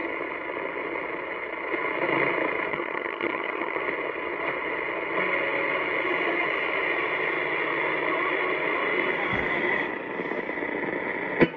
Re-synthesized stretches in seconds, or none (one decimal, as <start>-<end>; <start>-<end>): 2.7-3.8